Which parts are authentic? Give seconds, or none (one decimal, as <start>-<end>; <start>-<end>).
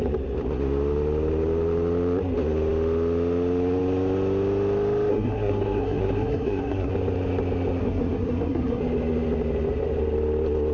0.0-5.1; 6.9-7.8; 8.8-10.7